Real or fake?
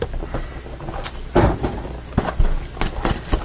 real